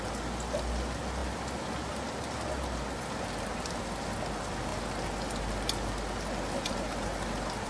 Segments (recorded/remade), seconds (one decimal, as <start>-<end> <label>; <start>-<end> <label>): 0.0-7.7 recorded